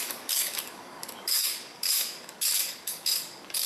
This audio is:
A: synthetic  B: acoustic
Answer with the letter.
A